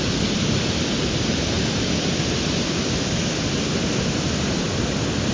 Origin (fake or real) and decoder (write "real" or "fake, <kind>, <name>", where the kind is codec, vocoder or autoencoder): fake, vocoder, BigVGAN v2